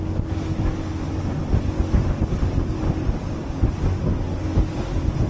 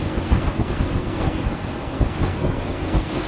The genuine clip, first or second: first